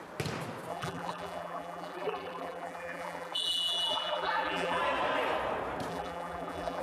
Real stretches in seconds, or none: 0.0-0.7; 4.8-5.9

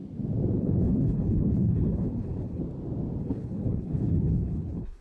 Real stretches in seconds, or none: 0.0-0.6; 2.6-3.2

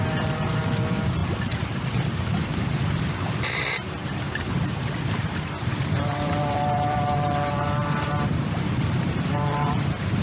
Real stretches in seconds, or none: 1.2-2.1

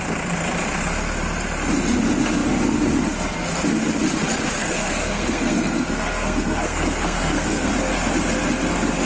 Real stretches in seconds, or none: 0.0-4.6; 7.7-9.1